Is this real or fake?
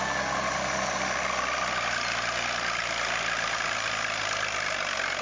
real